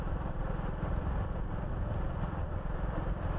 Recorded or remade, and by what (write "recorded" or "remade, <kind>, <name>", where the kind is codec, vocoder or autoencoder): recorded